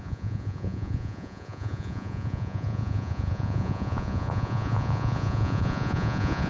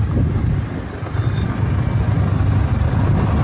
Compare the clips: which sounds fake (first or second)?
first